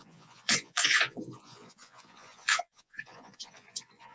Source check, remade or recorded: remade